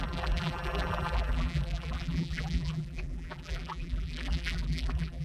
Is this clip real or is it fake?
fake